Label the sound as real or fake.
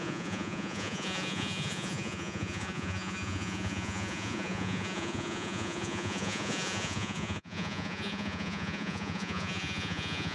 fake